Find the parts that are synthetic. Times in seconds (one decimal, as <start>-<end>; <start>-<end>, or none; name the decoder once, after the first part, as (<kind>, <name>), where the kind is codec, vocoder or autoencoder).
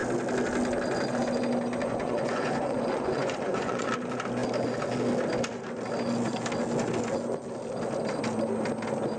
1.8-3.9 (vocoder, Vocos)